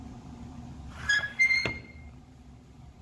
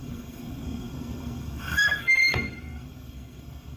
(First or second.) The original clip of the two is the first